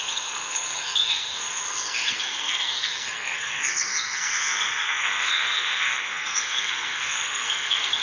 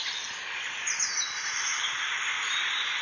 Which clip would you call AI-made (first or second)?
first